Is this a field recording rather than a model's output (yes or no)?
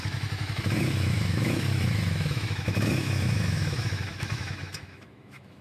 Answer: no